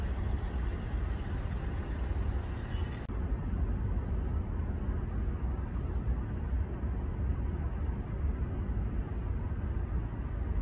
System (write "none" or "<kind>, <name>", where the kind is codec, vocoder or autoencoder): none